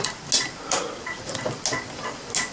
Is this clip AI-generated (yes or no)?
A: no